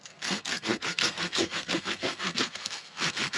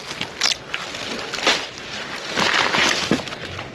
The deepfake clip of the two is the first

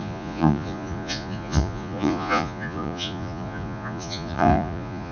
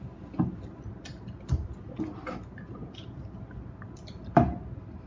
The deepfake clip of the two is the first